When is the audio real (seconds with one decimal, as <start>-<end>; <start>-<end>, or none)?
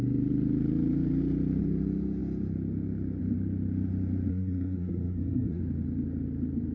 0.0-4.3; 5.6-6.7